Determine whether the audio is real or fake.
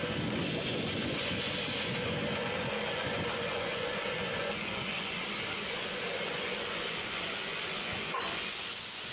fake